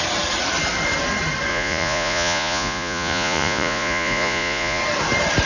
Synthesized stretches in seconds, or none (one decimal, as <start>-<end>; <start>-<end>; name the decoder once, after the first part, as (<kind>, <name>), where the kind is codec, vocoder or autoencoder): 1.5-4.8 (vocoder, Vocos)